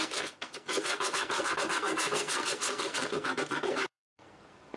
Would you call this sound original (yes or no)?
no